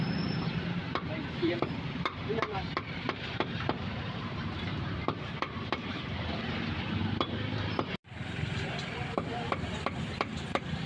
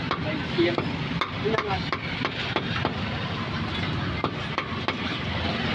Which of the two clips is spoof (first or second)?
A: first